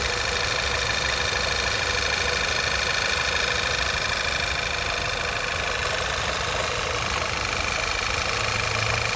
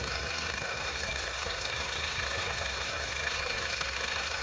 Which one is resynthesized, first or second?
second